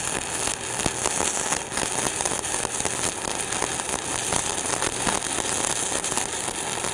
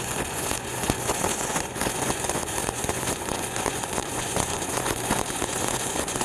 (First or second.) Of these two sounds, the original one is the first